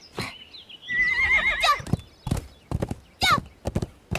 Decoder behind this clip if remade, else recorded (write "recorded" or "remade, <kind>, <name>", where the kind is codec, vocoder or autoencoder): recorded